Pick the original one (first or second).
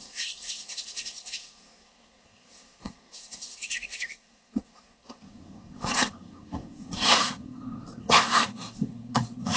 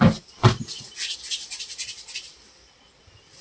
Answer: second